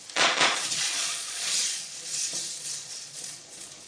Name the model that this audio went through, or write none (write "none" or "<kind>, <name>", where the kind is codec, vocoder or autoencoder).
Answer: vocoder, Vocos